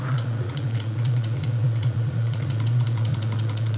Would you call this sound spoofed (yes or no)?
yes